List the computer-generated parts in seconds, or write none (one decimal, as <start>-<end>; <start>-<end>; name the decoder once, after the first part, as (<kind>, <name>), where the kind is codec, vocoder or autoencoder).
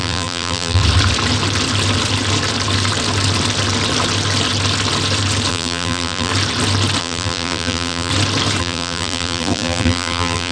0.0-0.8 (vocoder, BigVGAN v2); 5.5-6.3; 7.0-8.1; 8.6-10.5